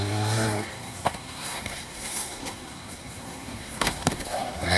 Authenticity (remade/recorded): remade